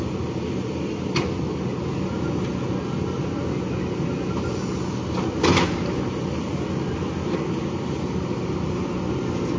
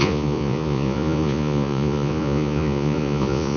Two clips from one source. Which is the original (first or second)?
first